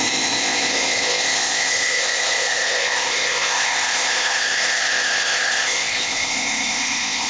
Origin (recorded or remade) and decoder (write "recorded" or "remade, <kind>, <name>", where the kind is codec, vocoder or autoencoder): remade, codec, ZipCodec